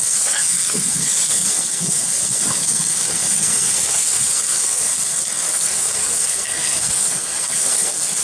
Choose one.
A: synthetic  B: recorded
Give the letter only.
A